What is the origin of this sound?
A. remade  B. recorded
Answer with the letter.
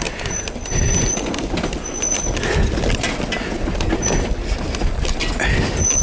B